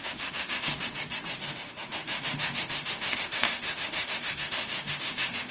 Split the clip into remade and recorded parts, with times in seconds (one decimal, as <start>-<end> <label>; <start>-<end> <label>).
0.0-0.7 remade; 0.7-1.3 recorded; 1.3-5.5 remade